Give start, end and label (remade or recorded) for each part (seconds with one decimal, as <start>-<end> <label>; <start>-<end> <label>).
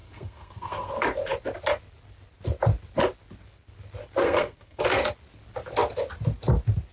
0.0-0.9 remade; 0.9-4.2 recorded; 4.2-4.8 remade; 4.8-6.9 recorded